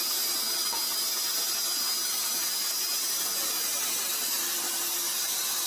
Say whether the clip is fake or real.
real